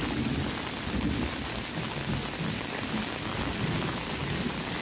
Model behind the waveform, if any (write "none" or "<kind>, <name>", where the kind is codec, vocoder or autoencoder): none